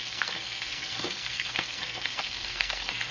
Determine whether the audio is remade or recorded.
remade